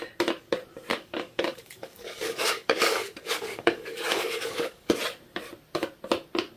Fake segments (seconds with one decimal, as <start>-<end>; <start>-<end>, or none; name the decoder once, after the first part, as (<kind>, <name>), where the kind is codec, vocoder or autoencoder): 0.9-4.9 (codec, DAC)